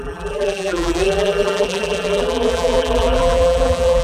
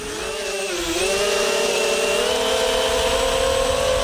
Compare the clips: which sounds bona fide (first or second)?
second